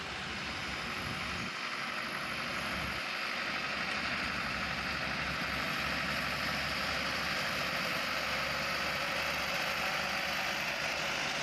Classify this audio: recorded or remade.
recorded